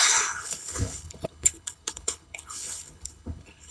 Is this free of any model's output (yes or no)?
no